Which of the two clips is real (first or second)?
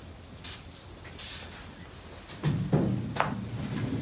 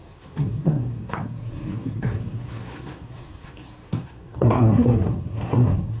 first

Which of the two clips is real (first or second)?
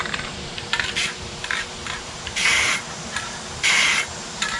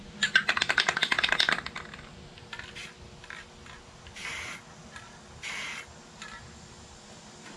second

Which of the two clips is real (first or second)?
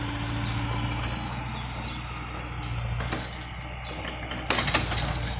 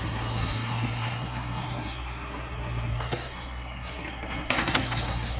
first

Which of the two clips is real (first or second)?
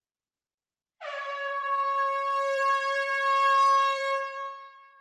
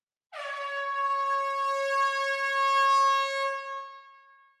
second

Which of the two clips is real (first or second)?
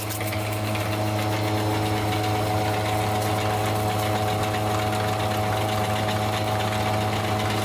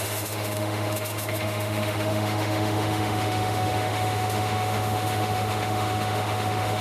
first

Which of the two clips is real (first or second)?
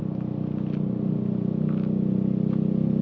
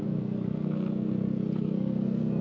first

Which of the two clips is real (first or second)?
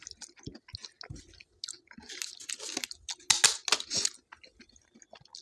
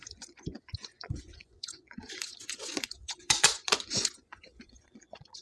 first